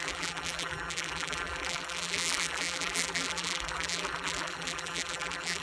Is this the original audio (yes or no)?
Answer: no